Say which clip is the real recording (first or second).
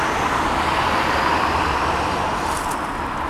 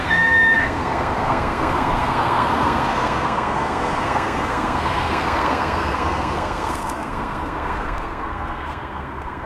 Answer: first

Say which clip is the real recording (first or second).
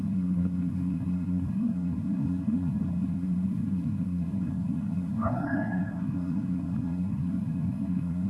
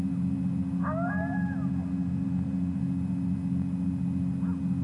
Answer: second